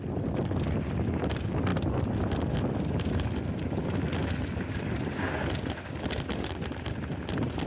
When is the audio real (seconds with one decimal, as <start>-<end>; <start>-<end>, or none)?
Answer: 0.0-7.7